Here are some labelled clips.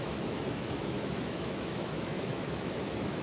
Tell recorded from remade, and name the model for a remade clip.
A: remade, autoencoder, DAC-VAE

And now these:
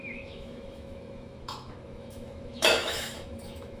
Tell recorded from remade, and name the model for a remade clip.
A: remade, autoencoder, DAC-VAE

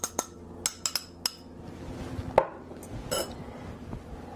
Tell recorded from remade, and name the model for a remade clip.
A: recorded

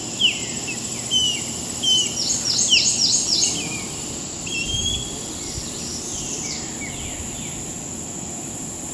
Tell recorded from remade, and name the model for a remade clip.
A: recorded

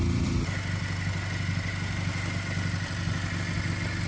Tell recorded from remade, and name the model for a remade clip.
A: recorded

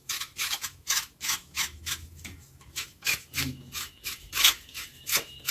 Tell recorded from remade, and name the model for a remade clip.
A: remade, autoencoder, DAC-VAE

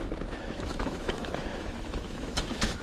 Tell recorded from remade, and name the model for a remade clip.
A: remade, autoencoder, DAC-VAE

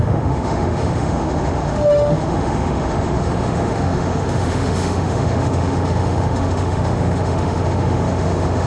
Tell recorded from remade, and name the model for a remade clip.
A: remade, autoencoder, DAC-VAE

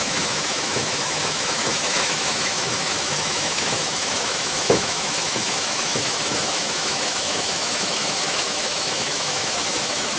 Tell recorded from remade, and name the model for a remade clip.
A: remade, autoencoder, DAC-VAE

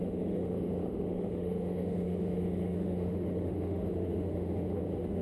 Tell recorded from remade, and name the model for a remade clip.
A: remade, autoencoder, DAC-VAE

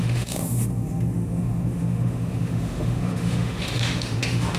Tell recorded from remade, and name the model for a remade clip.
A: remade, autoencoder, DAC-VAE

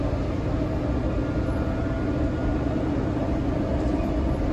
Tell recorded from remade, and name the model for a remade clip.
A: recorded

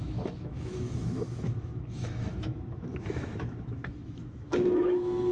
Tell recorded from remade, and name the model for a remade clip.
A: remade, autoencoder, DAC-VAE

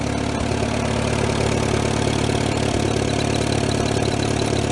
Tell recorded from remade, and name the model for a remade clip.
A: recorded